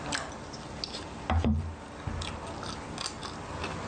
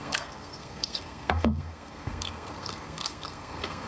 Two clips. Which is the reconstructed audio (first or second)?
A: second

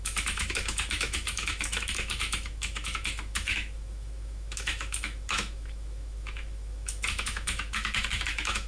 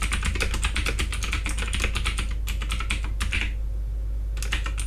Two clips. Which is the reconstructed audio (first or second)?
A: first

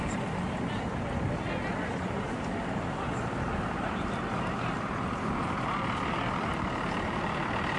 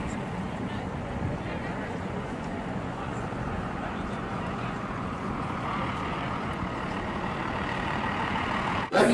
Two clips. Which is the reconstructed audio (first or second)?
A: second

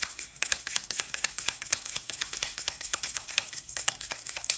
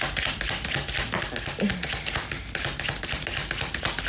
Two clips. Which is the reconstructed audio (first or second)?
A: first